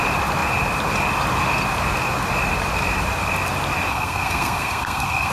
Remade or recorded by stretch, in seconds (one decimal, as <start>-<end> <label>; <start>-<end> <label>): 0.0-3.9 recorded; 3.9-5.3 remade